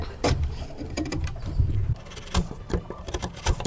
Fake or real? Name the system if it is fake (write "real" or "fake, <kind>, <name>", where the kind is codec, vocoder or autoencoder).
fake, vocoder, BigVGAN v2